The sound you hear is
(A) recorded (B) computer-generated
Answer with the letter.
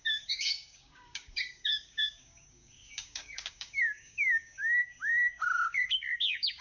B